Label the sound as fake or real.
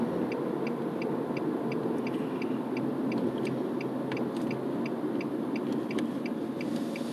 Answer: real